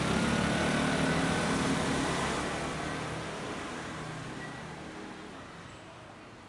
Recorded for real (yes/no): yes